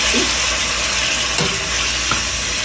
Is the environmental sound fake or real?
real